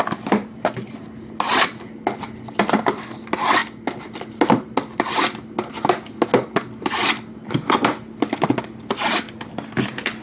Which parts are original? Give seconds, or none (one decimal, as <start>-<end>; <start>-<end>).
0.0-10.2